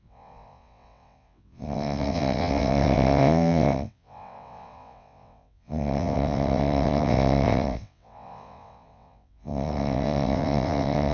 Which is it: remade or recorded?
remade